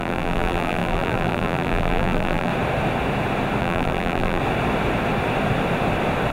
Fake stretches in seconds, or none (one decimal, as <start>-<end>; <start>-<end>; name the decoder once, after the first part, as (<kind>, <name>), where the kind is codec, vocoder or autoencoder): 0.0-2.5 (vocoder, BigVGAN v2); 3.6-4.4